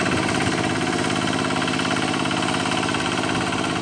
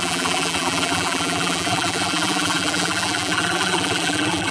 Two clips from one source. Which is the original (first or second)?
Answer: first